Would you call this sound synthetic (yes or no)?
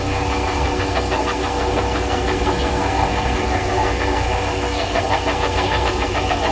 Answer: yes